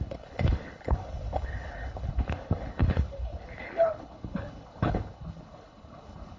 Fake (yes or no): yes